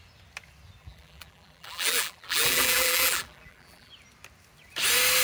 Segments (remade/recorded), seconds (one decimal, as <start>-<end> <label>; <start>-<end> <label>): 0.0-0.8 recorded; 0.8-3.9 remade; 3.9-5.2 recorded